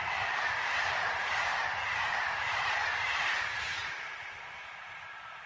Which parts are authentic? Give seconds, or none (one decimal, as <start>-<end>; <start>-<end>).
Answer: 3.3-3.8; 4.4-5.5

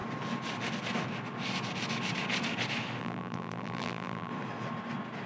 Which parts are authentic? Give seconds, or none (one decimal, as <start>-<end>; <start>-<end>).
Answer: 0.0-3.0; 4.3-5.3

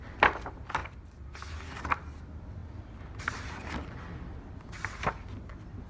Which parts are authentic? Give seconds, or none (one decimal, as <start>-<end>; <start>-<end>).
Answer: 0.0-5.9

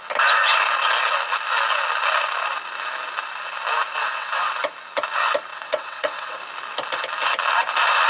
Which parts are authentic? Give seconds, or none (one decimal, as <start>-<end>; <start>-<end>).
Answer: 0.0-4.0; 4.5-5.5; 6.4-8.1

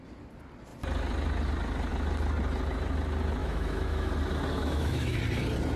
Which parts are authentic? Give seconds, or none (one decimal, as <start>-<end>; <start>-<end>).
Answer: 0.0-3.4; 4.1-4.6; 5.2-5.8

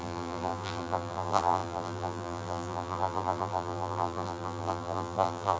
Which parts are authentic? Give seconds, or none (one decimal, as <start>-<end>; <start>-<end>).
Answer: none

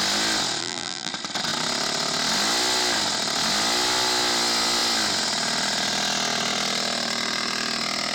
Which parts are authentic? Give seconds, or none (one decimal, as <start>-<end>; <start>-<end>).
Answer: 0.0-0.6; 1.1-8.1

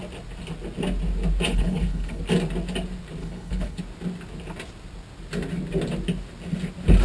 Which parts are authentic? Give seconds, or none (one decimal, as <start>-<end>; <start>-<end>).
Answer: 0.0-1.5; 2.2-3.2; 3.8-7.0